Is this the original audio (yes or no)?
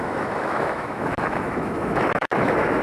no